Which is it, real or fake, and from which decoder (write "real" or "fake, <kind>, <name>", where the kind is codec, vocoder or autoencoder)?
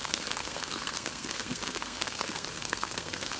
fake, codec, SNAC